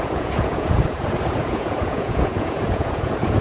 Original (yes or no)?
no